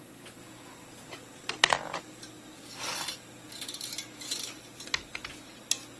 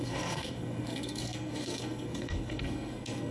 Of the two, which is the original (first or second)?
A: first